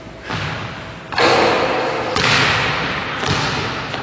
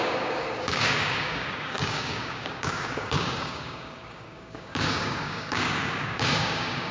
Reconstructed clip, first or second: second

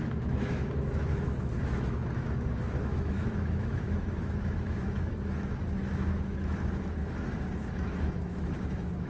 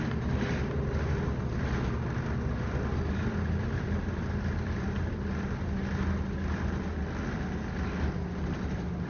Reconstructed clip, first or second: first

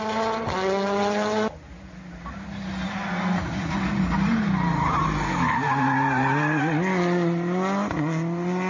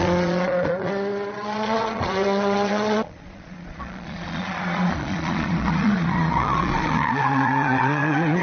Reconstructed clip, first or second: second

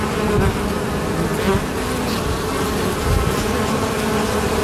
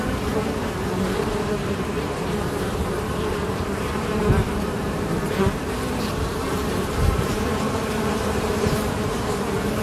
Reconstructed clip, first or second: second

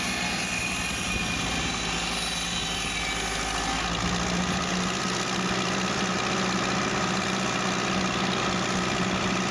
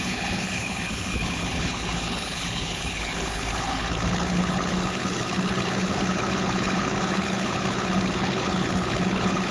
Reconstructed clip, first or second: second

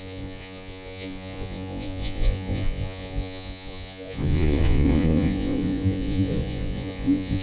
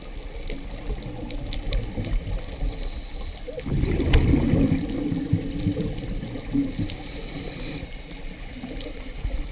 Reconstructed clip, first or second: first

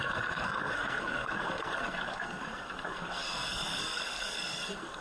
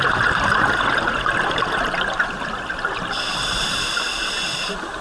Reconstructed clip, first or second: first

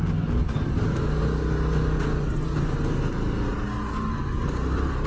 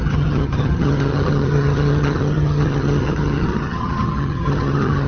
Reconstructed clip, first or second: second